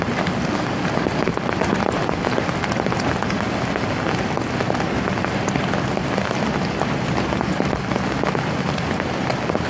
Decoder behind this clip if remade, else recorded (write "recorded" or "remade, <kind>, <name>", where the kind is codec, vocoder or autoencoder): remade, vocoder, BigVGAN v2